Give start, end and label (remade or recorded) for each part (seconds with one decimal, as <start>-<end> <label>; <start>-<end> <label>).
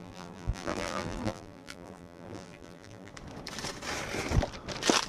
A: 0.0-3.1 remade; 3.1-5.1 recorded